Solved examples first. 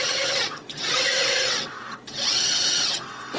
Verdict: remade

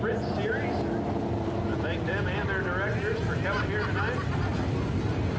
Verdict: recorded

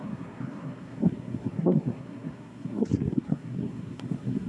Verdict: remade